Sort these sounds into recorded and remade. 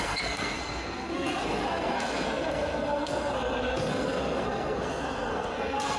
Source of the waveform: remade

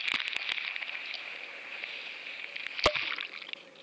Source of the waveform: recorded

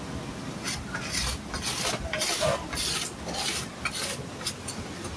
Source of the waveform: recorded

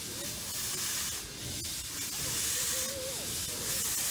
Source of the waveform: recorded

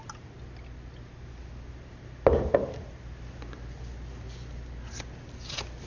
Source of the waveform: recorded